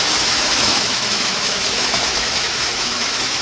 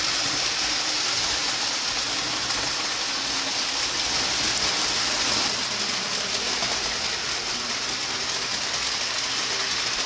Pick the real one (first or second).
second